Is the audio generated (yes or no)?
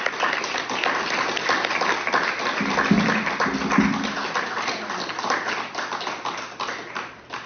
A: no